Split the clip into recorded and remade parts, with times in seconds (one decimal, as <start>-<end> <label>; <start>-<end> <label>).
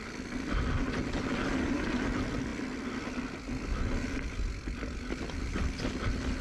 0.0-6.4 recorded